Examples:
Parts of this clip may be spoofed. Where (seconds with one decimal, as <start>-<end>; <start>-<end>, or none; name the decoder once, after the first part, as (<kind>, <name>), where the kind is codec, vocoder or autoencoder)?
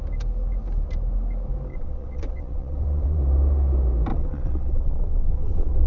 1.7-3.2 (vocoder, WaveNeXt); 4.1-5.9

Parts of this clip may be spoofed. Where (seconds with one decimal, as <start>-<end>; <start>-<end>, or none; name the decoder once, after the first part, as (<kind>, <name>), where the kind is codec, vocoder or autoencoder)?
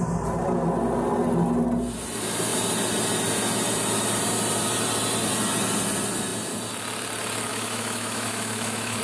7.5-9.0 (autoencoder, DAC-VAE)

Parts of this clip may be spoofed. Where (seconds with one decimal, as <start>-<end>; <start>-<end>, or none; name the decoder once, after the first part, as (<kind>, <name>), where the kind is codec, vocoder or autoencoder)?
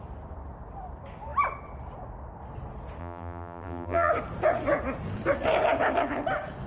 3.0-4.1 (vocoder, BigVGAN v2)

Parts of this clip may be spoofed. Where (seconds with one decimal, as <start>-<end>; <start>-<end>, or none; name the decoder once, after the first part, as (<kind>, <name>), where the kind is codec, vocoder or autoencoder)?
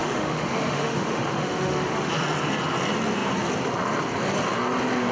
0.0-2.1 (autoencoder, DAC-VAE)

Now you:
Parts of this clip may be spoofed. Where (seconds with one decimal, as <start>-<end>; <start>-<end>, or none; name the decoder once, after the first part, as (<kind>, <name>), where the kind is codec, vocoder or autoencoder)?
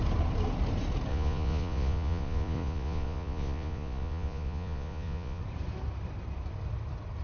1.1-5.4 (vocoder, Vocos)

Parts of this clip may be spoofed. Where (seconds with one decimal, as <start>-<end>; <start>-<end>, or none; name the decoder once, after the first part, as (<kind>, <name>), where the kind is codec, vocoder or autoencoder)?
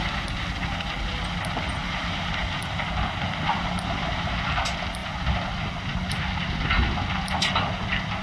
1.8-2.9 (vocoder, BigVGAN v2); 3.5-4.3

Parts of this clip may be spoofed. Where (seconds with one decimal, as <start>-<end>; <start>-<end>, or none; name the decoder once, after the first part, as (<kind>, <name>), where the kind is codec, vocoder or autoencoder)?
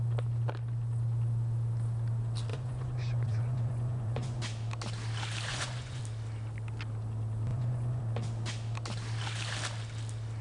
2.5-4.4 (vocoder, Vocos); 5.5-6.0; 7.5-8.0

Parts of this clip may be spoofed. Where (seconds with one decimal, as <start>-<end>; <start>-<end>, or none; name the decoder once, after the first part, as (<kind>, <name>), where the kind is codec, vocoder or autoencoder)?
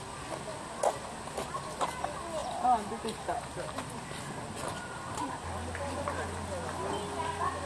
none